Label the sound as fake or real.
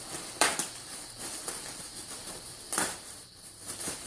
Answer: fake